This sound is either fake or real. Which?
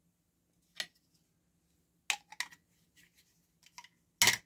real